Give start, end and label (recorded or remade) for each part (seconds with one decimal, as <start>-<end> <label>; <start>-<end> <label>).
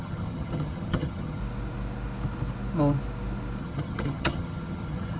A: 0.0-1.4 remade; 1.4-3.6 recorded; 3.6-5.2 remade